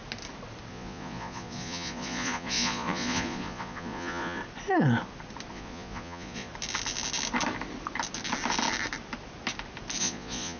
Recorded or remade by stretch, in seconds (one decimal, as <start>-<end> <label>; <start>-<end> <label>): 0.0-0.7 recorded; 0.7-4.4 remade; 4.4-5.5 recorded; 5.5-6.5 remade; 6.5-10.0 recorded; 10.0-10.6 remade